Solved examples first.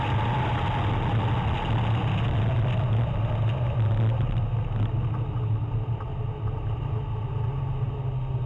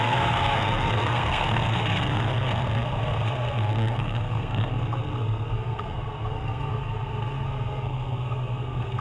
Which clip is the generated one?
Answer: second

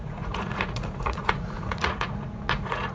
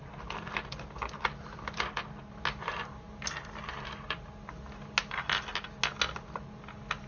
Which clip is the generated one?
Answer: first